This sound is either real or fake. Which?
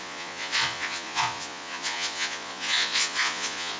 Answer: fake